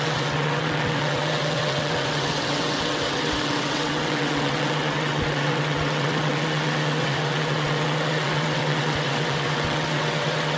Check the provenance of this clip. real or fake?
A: fake